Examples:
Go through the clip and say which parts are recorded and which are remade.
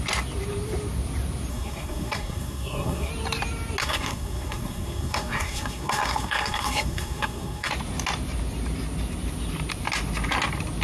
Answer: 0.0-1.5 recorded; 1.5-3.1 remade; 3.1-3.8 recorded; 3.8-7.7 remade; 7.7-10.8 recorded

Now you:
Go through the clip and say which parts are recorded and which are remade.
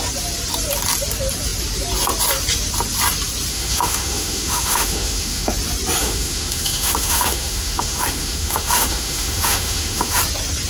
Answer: 0.0-3.5 recorded; 3.5-5.5 remade; 5.5-6.0 recorded; 6.0-10.2 remade; 10.2-10.7 recorded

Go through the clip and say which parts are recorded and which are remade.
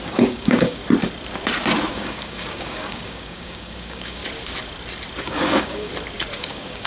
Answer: 0.0-0.8 remade; 0.8-1.9 recorded; 1.9-4.2 remade; 4.2-5.2 recorded; 5.2-5.9 remade; 5.9-6.4 recorded; 6.4-6.9 remade